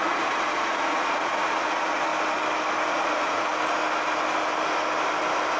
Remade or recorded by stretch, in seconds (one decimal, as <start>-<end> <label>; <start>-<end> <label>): 0.0-2.1 remade; 2.1-2.9 recorded; 2.9-3.5 remade; 3.5-5.6 recorded